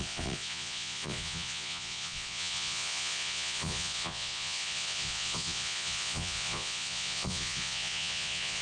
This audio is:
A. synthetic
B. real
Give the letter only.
A